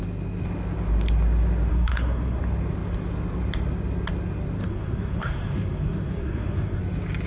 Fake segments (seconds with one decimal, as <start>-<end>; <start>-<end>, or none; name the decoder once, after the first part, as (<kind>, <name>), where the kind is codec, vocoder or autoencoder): 1.7-2.4 (codec, SNAC); 4.6-6.8